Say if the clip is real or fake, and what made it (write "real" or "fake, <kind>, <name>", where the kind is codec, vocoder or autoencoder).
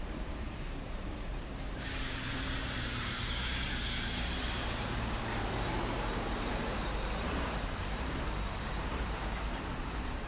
fake, vocoder, BigVGAN v2